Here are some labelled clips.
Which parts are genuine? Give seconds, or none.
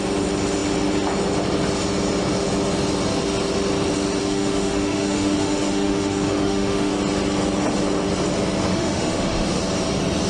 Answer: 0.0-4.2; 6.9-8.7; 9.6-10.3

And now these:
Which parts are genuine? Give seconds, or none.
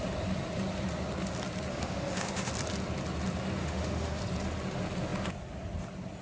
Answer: 0.0-1.7; 2.5-3.6; 4.2-6.2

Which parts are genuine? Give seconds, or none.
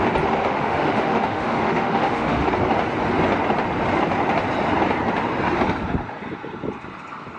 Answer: 0.0-0.4; 2.5-7.4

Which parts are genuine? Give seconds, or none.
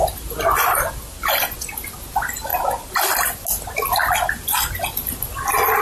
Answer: 0.0-5.8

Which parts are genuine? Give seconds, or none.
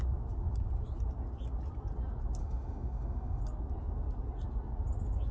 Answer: 0.0-2.4; 3.4-5.3